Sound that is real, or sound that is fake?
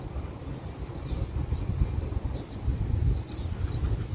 real